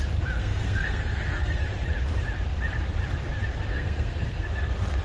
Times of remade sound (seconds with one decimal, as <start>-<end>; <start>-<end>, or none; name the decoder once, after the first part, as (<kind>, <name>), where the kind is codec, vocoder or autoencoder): 0.4-1.6 (codec, SNAC); 3.7-4.5